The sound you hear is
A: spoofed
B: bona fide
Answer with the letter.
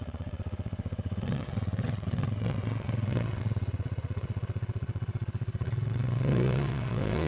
A